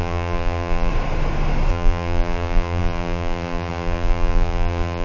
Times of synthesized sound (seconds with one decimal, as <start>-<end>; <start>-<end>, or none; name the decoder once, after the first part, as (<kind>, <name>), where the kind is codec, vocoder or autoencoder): 0.0-0.9 (vocoder, BigVGAN v2); 1.7-5.0